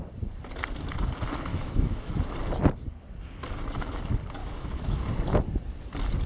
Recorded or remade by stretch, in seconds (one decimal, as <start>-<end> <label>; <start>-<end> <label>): 0.0-1.5 recorded; 1.5-2.1 remade; 2.1-4.4 recorded; 4.4-5.0 remade; 5.0-6.3 recorded